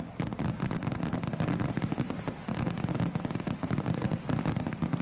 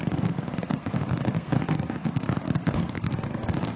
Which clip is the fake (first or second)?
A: second